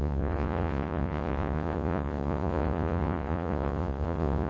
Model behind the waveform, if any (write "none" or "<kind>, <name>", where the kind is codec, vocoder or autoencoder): vocoder, Vocos